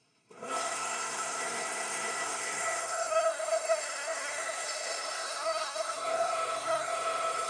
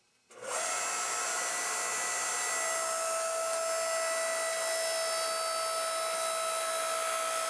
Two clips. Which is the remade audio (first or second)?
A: first